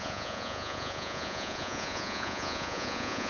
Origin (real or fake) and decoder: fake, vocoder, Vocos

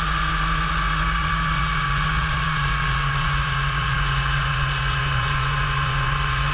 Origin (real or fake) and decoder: fake, vocoder, Vocos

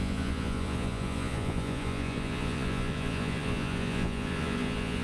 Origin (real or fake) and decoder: fake, vocoder, Vocos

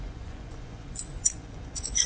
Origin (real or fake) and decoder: fake, vocoder, Vocos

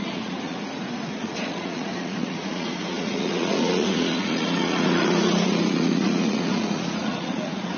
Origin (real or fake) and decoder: fake, vocoder, Vocos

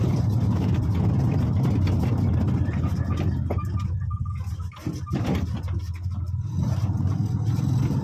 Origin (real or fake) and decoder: real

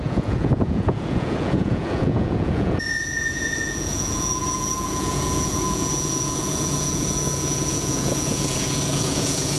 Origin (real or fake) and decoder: fake, vocoder, Vocos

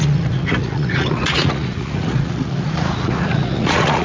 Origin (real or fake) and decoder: fake, vocoder, Vocos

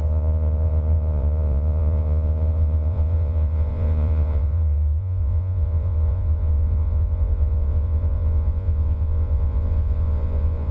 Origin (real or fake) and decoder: fake, vocoder, Vocos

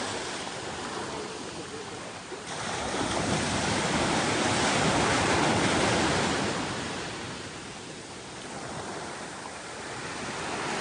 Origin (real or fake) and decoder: real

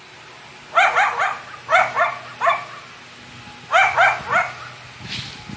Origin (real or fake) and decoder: real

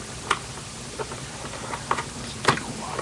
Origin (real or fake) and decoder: real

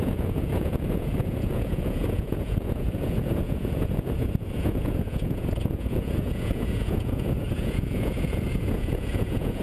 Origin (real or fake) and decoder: fake, vocoder, Vocos